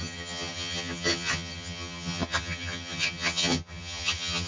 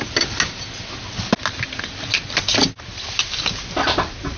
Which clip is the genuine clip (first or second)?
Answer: second